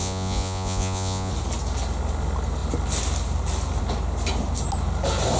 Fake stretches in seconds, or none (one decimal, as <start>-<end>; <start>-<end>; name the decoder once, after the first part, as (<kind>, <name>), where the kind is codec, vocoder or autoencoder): 0.0-1.3 (vocoder, Vocos)